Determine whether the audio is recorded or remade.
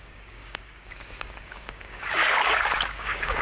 remade